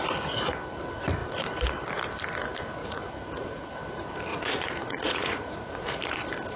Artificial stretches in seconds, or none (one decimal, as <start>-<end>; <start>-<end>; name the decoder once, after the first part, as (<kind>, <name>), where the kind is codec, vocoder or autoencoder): 2.8-3.7 (vocoder, Vocos); 4.3-6.0

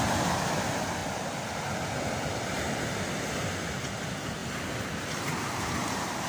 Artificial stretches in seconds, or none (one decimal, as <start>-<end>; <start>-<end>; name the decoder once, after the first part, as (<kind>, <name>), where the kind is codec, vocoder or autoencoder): none

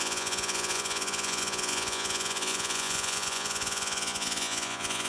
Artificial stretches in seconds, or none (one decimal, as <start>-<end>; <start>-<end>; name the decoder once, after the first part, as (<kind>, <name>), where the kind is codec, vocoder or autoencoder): 0.0-5.1 (vocoder, Vocos)